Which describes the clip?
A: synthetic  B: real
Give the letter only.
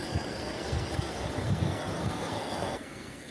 A